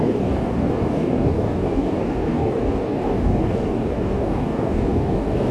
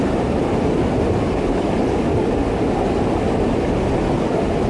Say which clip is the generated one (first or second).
first